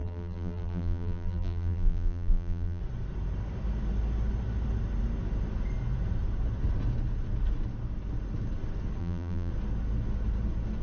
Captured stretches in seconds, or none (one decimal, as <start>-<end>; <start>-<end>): 2.8-9.0; 9.5-10.8